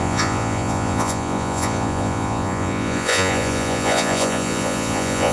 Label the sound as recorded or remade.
remade